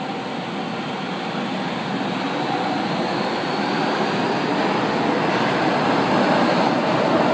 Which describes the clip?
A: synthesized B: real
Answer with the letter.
B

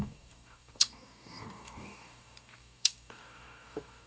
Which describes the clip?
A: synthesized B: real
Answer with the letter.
A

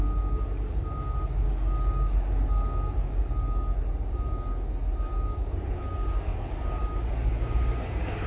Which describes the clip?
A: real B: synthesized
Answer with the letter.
B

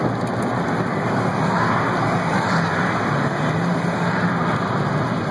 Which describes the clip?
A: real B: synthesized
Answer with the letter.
A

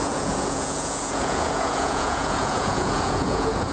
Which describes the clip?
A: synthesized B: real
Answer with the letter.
A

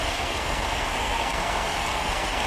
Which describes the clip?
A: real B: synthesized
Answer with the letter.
B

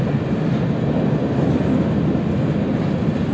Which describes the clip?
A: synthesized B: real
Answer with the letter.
B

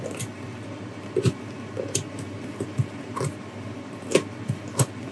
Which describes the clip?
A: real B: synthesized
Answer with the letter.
A